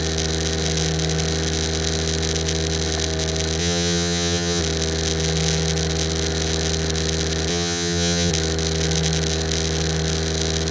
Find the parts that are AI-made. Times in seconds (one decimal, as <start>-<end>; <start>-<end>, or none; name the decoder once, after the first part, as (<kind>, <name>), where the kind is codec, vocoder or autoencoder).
3.6-4.6 (vocoder, HiFi-GAN); 7.5-8.3